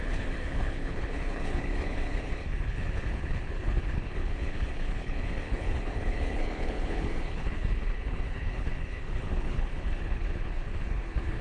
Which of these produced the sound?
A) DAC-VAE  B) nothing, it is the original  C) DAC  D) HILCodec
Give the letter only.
D